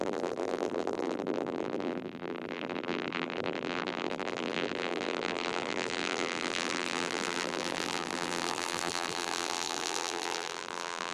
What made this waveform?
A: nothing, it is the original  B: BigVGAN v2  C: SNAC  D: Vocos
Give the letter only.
B